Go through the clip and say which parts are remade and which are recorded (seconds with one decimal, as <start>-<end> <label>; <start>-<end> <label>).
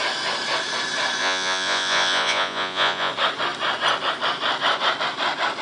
0.0-1.2 recorded; 1.2-3.1 remade; 3.1-5.6 recorded